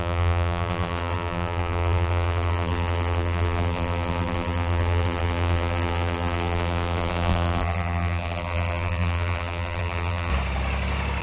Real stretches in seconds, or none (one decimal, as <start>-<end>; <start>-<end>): 10.3-11.2